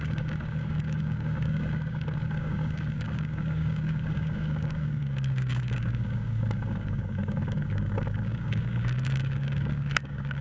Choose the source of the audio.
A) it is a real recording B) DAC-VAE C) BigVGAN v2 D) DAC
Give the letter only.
D